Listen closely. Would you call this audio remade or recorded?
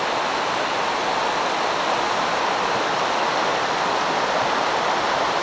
recorded